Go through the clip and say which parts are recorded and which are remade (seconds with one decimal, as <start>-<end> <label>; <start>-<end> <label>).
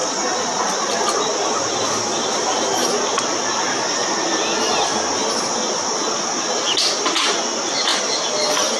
0.0-8.8 recorded